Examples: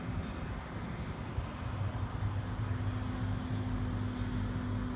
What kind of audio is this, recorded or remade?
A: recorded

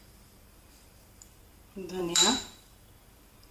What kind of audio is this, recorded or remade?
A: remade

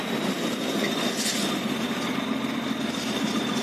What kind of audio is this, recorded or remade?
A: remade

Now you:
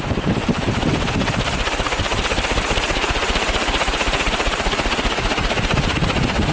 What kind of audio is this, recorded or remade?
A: remade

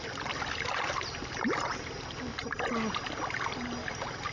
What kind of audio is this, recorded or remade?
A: recorded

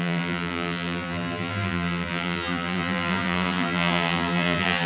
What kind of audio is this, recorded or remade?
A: remade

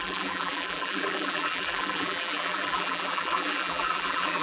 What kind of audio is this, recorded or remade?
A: remade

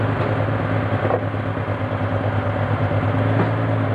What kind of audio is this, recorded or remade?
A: recorded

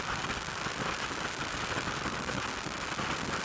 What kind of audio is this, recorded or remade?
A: recorded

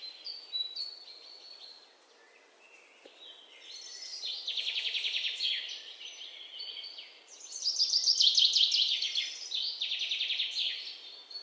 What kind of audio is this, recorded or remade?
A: remade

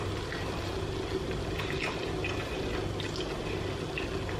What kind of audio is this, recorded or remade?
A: recorded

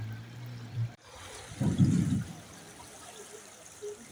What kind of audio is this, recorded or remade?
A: remade